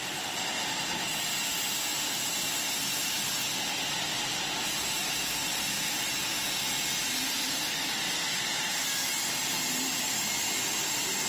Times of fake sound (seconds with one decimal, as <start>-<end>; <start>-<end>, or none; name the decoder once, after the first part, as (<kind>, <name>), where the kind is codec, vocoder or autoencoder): 0.0-0.9 (vocoder, BigVGAN v2); 9.4-10.1